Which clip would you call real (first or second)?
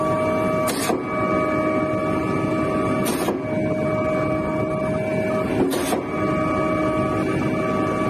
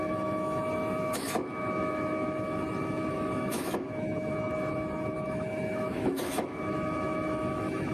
first